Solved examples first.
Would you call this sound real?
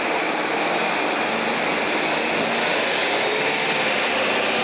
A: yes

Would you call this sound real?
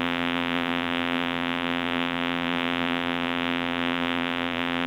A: no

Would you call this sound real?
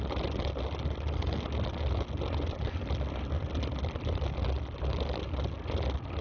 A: yes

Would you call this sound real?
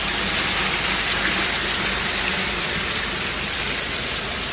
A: yes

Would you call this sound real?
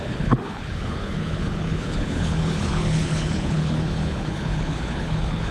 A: no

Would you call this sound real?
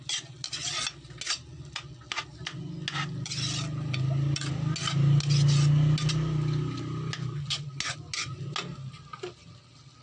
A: yes